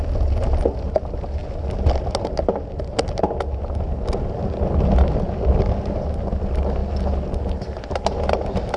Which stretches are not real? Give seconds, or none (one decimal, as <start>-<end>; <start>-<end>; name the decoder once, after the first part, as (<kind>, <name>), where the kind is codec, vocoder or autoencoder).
none